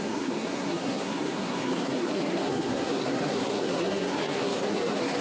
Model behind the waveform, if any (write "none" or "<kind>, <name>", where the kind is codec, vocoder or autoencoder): codec, SNAC